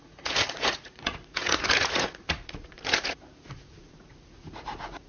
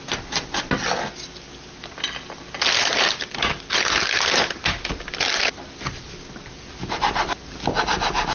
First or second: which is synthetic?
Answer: first